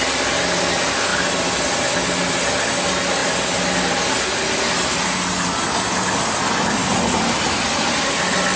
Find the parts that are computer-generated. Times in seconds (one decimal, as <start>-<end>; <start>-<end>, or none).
none